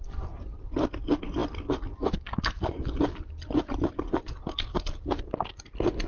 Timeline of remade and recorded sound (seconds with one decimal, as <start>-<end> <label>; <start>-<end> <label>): 0.0-6.1 recorded